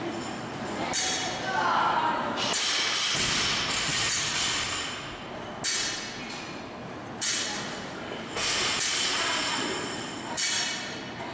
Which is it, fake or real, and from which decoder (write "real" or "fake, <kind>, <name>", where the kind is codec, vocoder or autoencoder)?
real